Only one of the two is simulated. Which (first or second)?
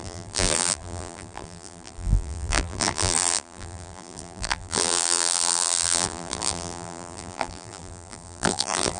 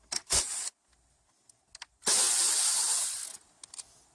first